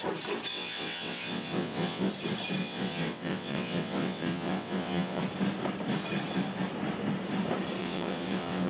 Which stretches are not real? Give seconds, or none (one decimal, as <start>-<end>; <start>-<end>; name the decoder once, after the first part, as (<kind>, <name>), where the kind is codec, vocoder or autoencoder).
0.5-2.1 (vocoder, WaveNeXt); 2.6-5.2; 7.8-8.7

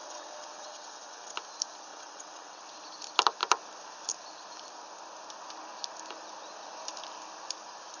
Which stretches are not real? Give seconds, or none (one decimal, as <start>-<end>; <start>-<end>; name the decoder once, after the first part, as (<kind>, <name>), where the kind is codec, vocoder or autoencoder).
0.0-1.3 (vocoder, WaveNeXt); 1.9-2.6

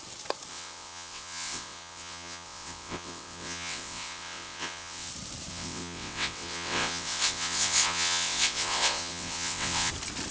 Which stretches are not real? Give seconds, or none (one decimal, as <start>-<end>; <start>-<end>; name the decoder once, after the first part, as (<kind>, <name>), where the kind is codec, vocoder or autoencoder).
0.5-5.1 (vocoder, WaveNeXt); 5.5-9.9

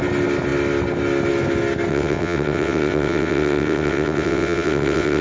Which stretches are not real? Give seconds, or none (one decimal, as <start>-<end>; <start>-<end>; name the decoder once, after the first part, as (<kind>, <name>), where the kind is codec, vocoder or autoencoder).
1.9-5.2 (vocoder, WaveNeXt)